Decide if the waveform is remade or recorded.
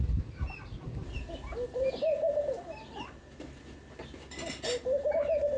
recorded